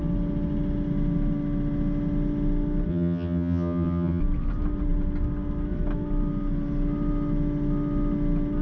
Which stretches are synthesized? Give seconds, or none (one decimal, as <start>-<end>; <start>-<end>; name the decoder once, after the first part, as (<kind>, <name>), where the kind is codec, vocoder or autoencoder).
2.9-4.2 (vocoder, HiFi-GAN)